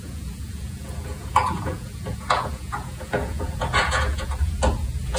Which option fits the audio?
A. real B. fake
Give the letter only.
B